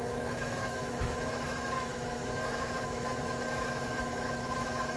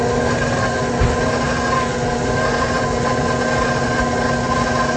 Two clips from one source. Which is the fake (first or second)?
first